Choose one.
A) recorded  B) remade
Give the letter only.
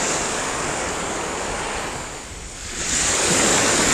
B